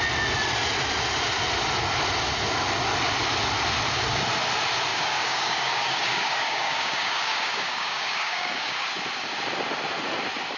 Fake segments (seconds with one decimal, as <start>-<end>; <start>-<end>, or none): 4.9-8.9